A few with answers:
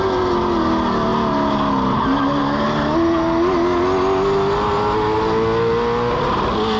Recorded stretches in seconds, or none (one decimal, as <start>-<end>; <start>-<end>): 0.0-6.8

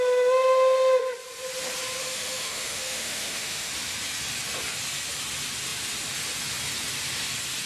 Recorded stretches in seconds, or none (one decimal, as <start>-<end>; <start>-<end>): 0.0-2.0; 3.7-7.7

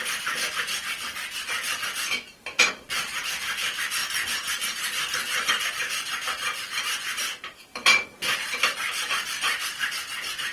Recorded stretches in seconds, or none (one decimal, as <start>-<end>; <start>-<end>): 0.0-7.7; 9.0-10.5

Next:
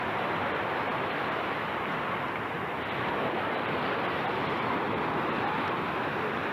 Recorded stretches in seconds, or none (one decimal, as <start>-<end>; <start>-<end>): 0.0-6.5